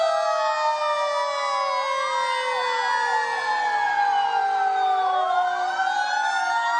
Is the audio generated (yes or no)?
no